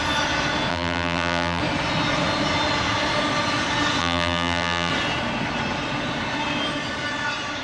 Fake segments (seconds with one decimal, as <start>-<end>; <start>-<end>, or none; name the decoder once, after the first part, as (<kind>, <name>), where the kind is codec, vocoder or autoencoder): 0.7-1.6 (vocoder, BigVGAN v2); 4.0-4.9